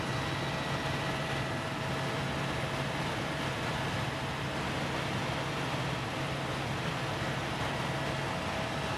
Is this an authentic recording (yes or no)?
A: yes